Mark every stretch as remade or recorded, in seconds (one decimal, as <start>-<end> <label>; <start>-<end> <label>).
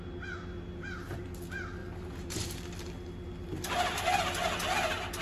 0.0-1.8 recorded; 1.8-2.6 remade; 2.6-5.2 recorded